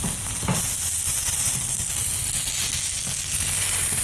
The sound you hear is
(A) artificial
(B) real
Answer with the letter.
B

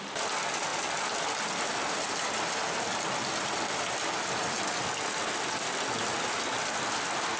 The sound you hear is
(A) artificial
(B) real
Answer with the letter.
B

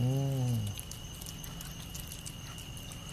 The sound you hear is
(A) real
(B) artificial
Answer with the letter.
A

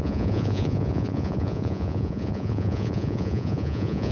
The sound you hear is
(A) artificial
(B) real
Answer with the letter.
A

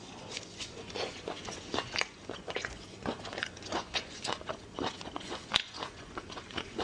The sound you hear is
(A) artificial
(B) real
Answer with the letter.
A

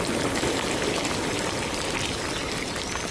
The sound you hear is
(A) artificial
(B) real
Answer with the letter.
B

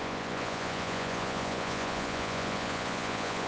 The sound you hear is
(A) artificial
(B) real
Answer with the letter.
A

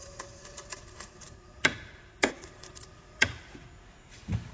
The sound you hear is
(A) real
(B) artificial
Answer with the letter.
B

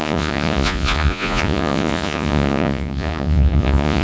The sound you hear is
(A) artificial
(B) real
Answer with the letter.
A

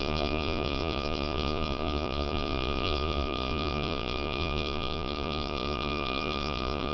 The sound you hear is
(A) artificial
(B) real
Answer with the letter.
A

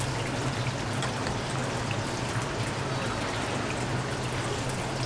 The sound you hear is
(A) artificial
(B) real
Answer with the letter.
B